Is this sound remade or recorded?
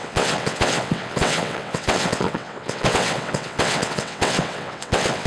remade